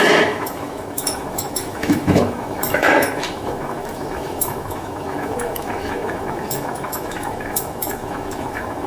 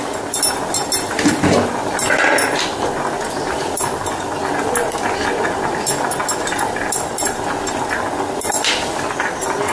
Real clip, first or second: second